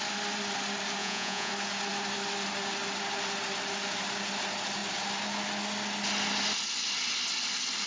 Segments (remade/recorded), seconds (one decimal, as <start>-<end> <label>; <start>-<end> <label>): 0.0-1.0 recorded; 1.0-1.5 remade; 1.5-7.9 recorded